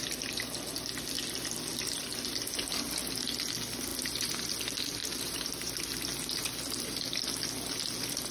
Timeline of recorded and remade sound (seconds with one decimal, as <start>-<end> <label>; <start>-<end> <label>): 0.0-5.0 recorded; 5.0-5.8 remade; 5.8-8.3 recorded